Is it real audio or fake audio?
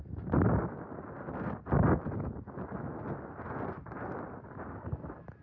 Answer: real